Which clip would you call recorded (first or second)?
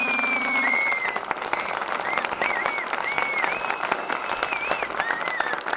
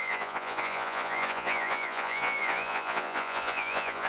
first